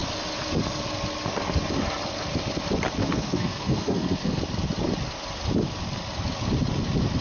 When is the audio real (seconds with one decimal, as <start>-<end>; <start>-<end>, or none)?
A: 0.0-3.0; 4.4-7.2